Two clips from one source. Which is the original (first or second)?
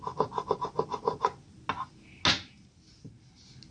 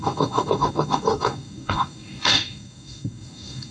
first